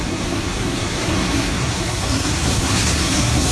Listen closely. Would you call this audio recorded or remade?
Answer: remade